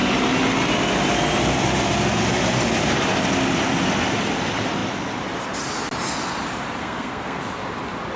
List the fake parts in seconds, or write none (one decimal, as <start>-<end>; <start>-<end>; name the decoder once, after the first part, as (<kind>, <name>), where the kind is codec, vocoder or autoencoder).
6.8-7.4 (codec, SNAC)

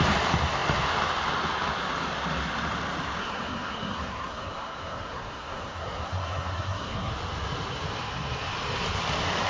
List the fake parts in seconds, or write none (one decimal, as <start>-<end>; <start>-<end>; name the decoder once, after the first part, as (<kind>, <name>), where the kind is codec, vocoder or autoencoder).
3.2-7.1 (codec, SNAC)